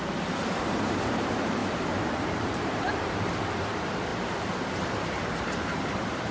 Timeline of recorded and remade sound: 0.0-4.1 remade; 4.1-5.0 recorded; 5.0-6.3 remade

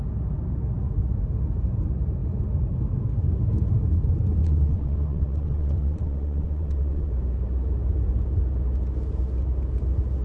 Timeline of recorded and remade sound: 0.0-4.4 recorded; 4.4-7.1 remade; 7.1-10.2 recorded

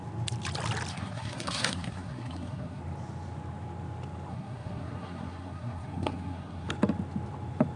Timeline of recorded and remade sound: 0.0-0.9 recorded; 0.9-2.8 remade; 2.8-4.3 recorded; 4.3-6.7 remade; 6.7-7.8 recorded